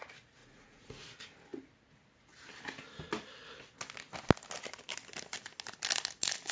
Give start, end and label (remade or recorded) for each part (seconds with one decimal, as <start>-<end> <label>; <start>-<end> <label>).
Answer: 0.0-0.4 recorded; 0.4-1.0 remade; 1.0-6.5 recorded